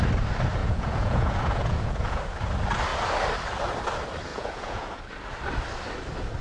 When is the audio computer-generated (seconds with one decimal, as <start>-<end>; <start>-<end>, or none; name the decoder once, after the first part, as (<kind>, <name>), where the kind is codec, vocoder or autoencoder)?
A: 0.6-2.2 (vocoder, Vocos); 4.3-5.0